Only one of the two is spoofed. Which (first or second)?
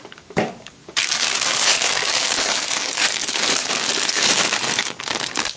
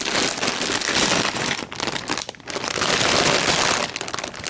first